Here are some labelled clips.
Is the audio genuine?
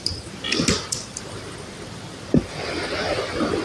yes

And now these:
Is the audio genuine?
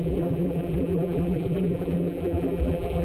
no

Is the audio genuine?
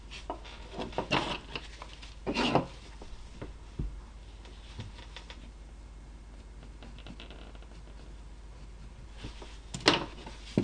yes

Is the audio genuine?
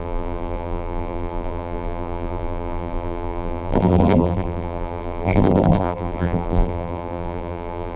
no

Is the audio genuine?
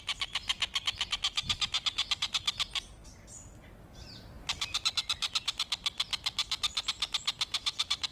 no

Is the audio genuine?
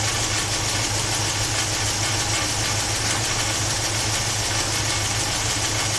yes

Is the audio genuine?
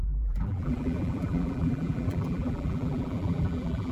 no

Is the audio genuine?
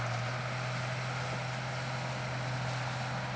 yes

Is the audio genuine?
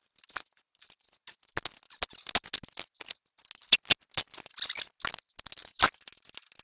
yes